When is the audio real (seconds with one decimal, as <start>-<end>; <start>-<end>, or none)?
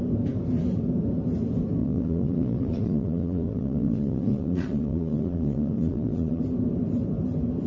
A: 0.0-1.8; 6.4-7.7